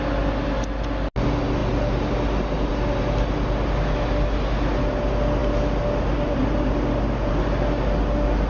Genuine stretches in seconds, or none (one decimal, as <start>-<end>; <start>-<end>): 0.0-8.5